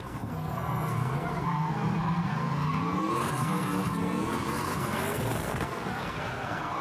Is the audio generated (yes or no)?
yes